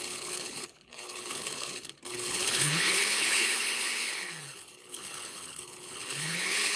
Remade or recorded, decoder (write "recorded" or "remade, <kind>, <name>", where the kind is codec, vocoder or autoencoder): remade, codec, HILCodec